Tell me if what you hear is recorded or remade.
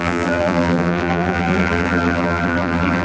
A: remade